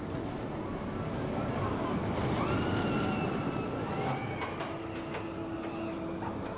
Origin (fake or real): real